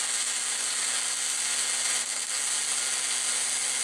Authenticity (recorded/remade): recorded